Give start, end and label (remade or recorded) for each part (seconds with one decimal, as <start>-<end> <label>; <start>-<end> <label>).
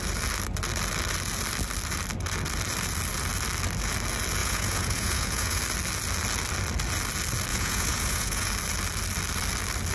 0.0-4.4 recorded; 4.4-5.6 remade; 5.6-7.5 recorded; 7.5-8.5 remade; 8.5-9.9 recorded